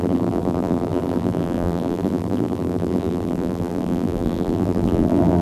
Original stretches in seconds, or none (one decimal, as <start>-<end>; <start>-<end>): none